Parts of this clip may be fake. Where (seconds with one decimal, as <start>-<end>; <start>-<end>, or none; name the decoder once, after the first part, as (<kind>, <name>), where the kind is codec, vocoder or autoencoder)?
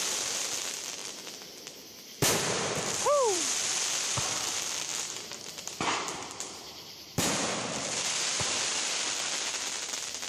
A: 0.0-1.0 (vocoder, BigVGAN v2); 2.4-10.3